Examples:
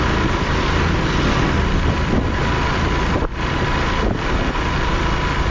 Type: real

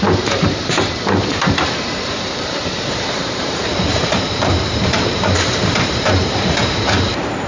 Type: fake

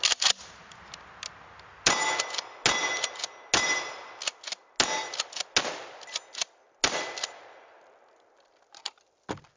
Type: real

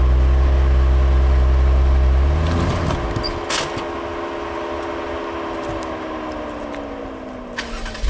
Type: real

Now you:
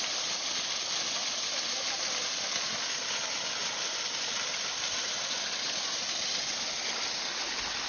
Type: real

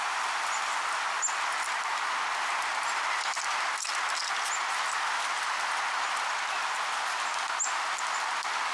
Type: real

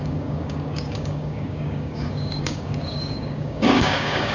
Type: fake